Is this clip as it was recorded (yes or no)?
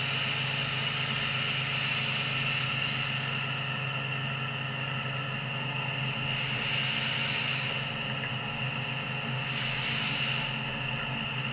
yes